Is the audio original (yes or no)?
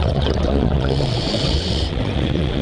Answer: no